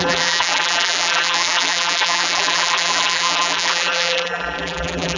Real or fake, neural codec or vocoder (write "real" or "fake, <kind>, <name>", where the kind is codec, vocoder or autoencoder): fake, vocoder, BigVGAN v2